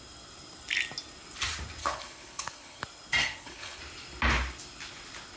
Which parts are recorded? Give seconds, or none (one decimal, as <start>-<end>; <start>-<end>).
0.0-1.8; 2.8-3.2; 3.8-5.4